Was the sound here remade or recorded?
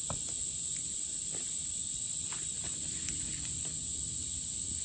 recorded